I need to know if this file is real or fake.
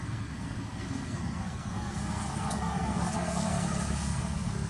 fake